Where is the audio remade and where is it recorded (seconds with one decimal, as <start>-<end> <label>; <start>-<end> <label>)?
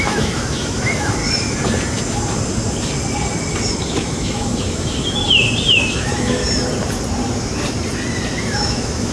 0.0-1.2 remade; 1.2-3.7 recorded; 3.7-5.2 remade; 5.2-5.8 recorded; 5.8-6.4 remade; 6.4-8.4 recorded; 8.4-9.1 remade